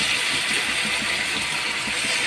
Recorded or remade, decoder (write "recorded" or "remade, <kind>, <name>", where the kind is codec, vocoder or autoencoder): recorded